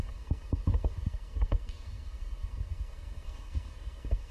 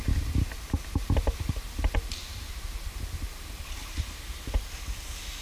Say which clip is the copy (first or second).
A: first